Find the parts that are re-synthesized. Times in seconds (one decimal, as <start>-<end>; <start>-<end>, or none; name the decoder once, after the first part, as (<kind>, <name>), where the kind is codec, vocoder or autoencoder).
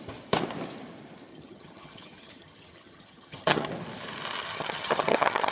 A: 1.3-3.7 (vocoder, HiFi-GAN); 4.4-5.5